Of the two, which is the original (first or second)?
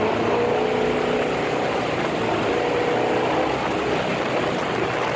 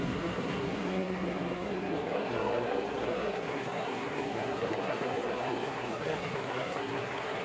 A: first